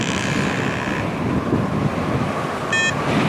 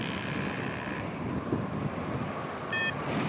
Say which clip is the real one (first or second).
first